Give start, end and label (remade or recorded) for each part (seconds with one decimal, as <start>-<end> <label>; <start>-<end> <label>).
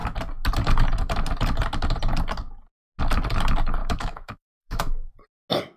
0.0-3.8 recorded; 3.8-5.1 remade; 5.1-5.8 recorded